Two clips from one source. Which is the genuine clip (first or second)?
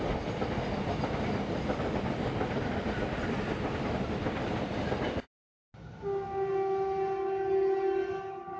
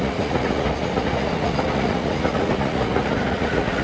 first